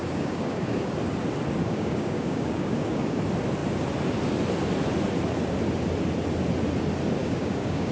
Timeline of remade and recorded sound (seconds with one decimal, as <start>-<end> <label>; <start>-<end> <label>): 0.0-0.9 remade; 0.9-1.6 recorded; 1.6-3.2 remade; 3.2-7.2 recorded; 7.2-7.9 remade